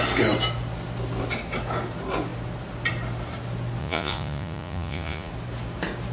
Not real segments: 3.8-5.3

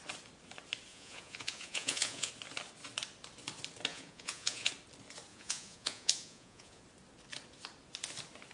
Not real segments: 0.9-2.3; 3.9-4.7; 5.3-6.8

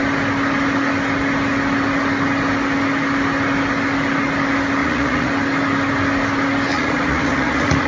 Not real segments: 4.8-5.3; 6.7-7.9

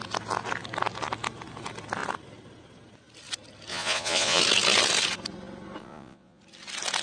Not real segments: 3.7-4.4; 5.8-6.4

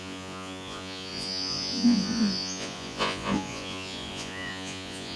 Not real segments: 0.0-5.2

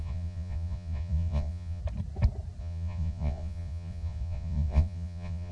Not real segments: 0.0-1.8; 2.6-5.5